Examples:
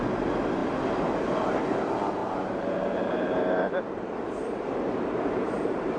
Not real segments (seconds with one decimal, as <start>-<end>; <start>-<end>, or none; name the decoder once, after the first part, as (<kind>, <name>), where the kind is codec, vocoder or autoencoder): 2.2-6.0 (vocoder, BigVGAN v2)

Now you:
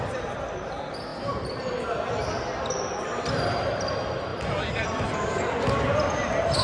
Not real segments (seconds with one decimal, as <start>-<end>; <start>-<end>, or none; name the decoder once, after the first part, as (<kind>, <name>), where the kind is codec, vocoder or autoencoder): none

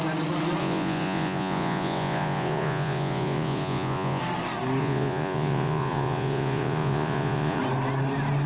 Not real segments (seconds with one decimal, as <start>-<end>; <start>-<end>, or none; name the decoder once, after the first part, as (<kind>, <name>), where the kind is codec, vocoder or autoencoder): 0.6-4.2 (vocoder, Vocos); 4.8-7.6